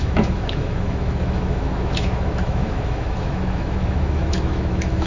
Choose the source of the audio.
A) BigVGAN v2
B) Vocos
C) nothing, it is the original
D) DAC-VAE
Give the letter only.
D